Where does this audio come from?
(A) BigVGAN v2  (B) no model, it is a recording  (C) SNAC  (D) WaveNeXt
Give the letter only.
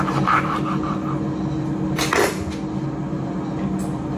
B